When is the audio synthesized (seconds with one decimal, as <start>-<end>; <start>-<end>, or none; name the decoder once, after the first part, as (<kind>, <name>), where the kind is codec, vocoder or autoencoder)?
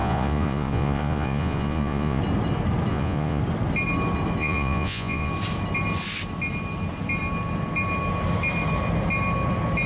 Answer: 0.0-2.2 (vocoder, Vocos); 2.9-3.4; 4.4-5.3